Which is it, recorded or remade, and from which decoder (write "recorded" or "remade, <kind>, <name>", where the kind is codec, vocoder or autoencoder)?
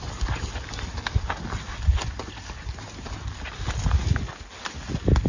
recorded